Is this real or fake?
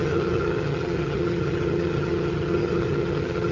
fake